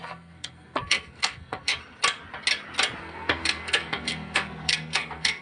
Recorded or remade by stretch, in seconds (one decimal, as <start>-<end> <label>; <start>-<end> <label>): 0.0-1.7 remade; 1.7-3.0 recorded; 3.0-5.4 remade